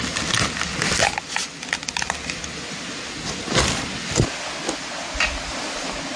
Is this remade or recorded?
recorded